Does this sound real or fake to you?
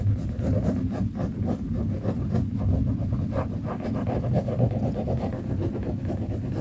real